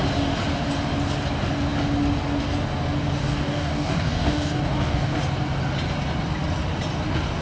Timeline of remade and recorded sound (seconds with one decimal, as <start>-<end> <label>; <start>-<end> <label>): 0.0-3.2 recorded; 3.2-5.2 remade; 5.2-7.4 recorded